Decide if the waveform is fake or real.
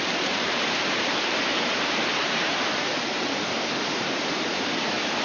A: fake